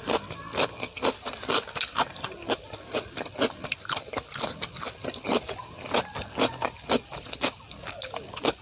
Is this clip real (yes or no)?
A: yes